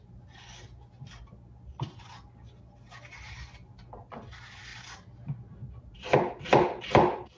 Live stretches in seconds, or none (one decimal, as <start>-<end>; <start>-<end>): 0.0-7.4